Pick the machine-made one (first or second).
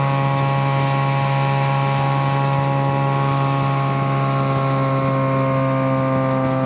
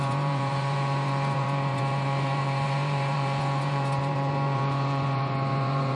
second